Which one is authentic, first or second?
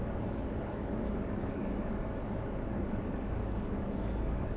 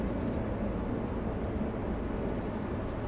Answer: second